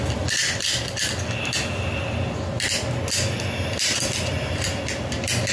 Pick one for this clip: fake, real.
real